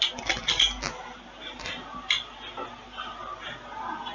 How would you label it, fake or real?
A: real